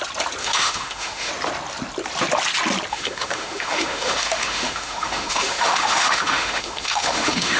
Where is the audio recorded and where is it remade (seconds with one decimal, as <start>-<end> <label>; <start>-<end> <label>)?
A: 0.0-0.4 recorded; 0.4-1.3 remade; 1.3-2.9 recorded; 2.9-7.6 remade